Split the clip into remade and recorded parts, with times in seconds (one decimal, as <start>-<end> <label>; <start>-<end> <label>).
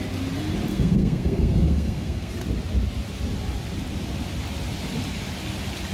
0.0-0.7 recorded; 0.7-2.3 remade; 2.3-5.9 recorded